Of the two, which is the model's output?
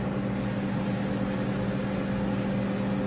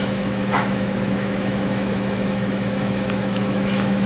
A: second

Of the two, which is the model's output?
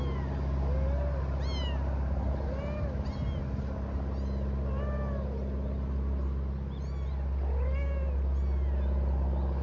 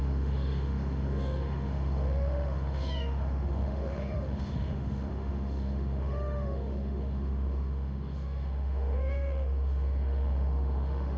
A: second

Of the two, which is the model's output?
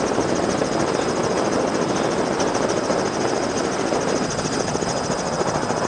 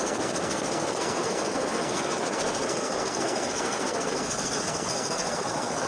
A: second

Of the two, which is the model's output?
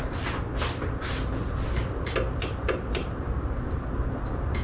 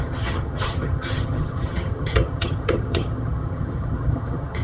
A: second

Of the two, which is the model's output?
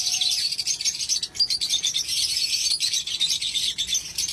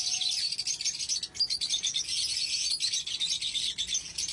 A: first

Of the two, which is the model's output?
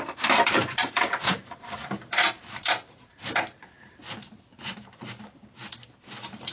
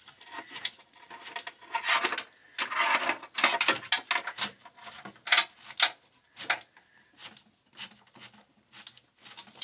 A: first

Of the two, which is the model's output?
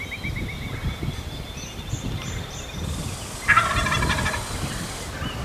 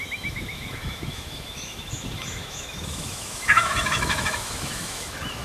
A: second